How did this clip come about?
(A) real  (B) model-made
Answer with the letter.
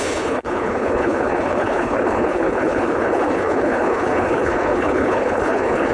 B